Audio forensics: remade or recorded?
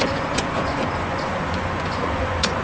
remade